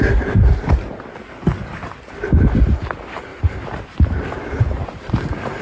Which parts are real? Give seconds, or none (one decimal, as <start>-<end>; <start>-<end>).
0.0-5.6